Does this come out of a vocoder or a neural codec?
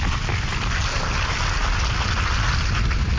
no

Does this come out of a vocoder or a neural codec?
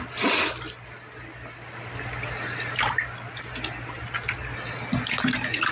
no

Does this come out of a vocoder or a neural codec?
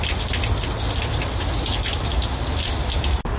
no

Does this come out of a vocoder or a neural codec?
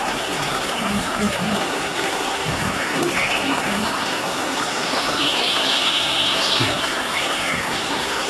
yes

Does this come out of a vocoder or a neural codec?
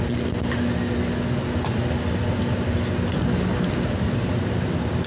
no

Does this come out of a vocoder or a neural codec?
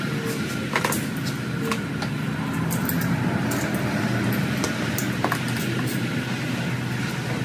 no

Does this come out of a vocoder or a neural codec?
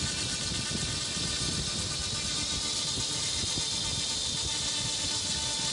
no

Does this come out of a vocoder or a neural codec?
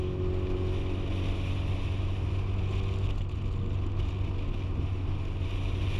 no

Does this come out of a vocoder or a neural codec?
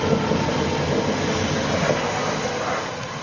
no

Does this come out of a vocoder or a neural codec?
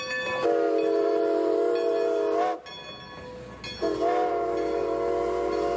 no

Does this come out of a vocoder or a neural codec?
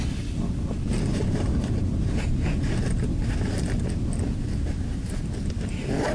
no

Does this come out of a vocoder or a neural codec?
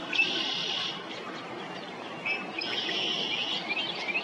no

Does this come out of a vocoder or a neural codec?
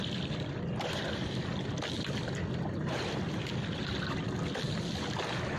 no